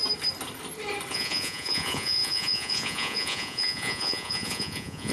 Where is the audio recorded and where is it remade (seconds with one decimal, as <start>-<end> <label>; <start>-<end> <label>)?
0.0-1.1 recorded; 1.1-5.1 remade